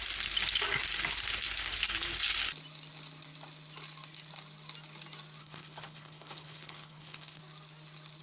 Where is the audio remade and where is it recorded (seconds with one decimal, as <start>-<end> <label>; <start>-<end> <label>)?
0.0-5.4 recorded; 5.4-7.4 remade; 7.4-8.2 recorded